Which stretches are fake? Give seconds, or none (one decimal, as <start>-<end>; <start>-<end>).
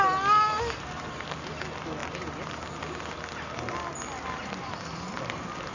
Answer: none